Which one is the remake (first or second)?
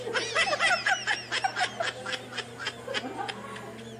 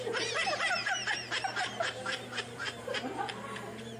second